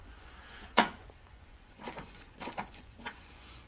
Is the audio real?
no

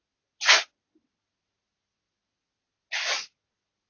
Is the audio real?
yes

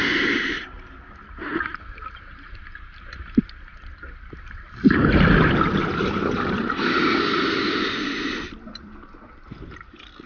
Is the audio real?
no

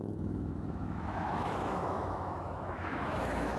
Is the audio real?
no